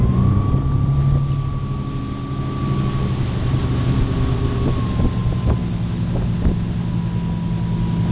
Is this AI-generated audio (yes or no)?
no